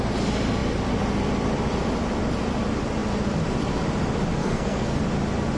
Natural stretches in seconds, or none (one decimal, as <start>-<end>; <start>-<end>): 0.0-4.4; 5.0-5.6

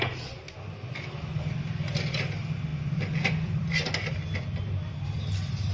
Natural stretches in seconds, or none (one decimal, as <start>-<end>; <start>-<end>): 0.0-5.7